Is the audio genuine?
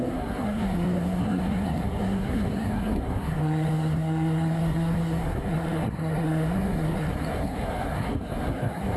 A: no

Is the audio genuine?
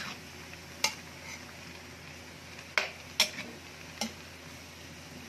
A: yes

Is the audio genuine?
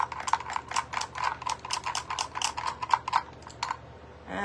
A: yes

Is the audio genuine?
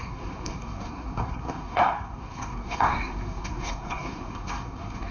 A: no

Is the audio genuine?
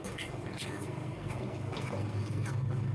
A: no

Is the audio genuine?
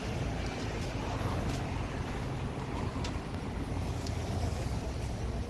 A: yes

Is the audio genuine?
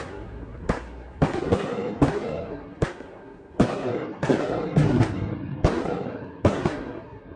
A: no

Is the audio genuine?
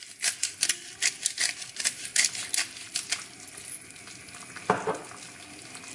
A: yes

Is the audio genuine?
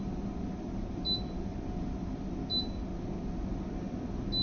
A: yes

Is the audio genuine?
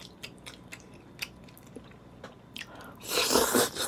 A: yes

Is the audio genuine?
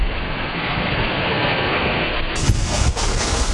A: no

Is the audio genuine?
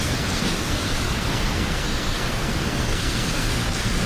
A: no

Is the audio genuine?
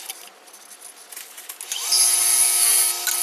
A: yes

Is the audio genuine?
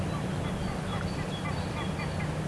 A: yes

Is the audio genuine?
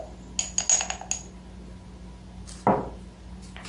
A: yes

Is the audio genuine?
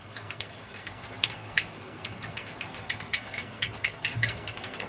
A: no